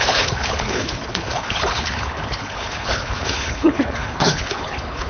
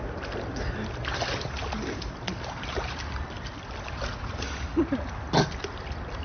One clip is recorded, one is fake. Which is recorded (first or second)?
second